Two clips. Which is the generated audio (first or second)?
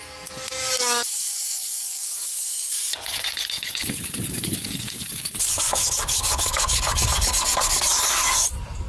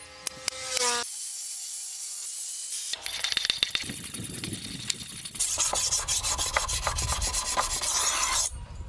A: first